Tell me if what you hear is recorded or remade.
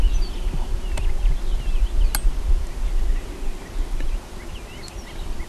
recorded